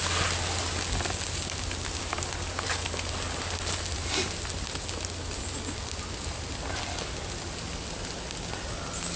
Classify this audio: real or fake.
real